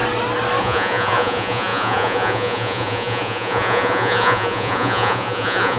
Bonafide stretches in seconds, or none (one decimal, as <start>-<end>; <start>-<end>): 0.0-0.6